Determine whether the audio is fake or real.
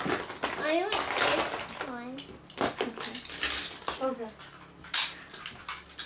real